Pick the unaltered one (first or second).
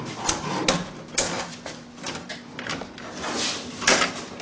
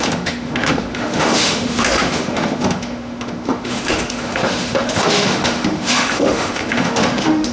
first